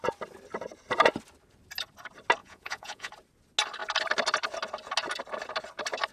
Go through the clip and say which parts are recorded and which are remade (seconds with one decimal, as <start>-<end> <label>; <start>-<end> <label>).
0.0-2.4 recorded; 2.4-3.1 remade; 3.1-6.1 recorded